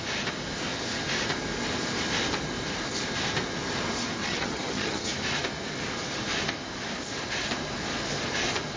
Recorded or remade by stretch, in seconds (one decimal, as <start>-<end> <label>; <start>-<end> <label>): 0.0-4.2 recorded; 4.2-5.1 remade; 5.1-8.8 recorded